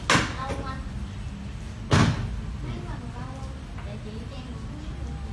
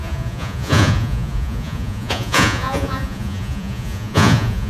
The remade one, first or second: second